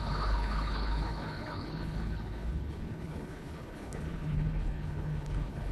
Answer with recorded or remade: remade